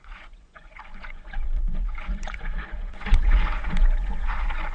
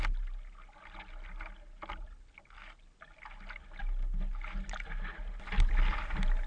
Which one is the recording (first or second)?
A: second